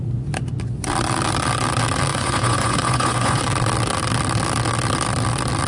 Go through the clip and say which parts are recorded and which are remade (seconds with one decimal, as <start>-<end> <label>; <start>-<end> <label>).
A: 0.0-2.1 recorded; 2.1-3.4 remade; 3.4-5.7 recorded